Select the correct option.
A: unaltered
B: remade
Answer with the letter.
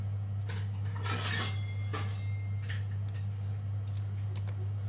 A